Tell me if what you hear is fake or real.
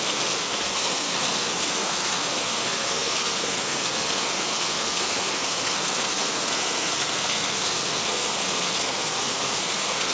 fake